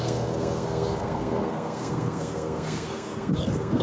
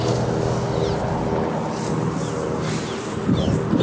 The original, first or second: second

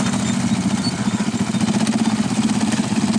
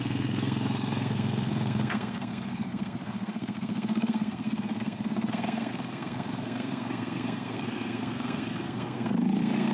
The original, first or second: first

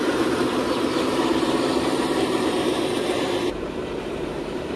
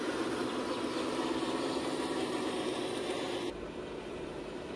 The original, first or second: second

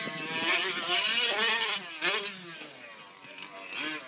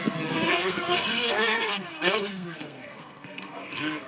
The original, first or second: first